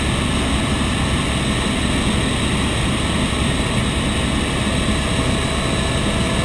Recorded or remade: recorded